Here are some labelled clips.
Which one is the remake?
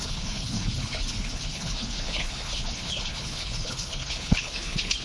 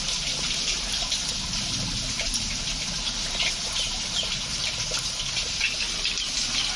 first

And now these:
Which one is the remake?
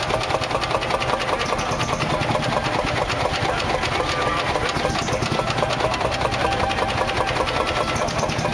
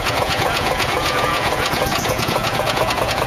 second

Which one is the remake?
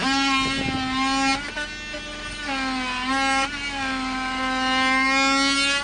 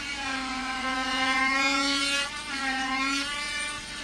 second